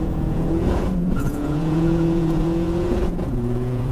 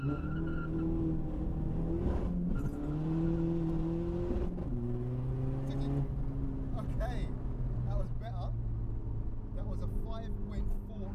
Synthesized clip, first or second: first